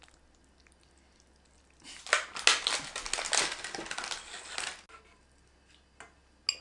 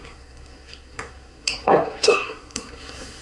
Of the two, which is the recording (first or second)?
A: first